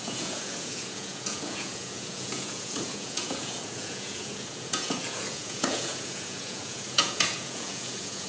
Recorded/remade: remade